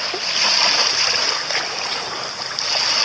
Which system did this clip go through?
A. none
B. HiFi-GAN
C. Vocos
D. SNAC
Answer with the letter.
A